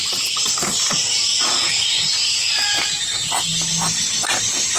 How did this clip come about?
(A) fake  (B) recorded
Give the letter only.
B